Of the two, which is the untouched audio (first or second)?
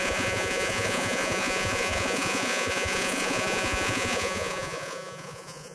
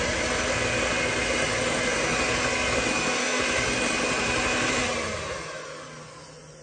second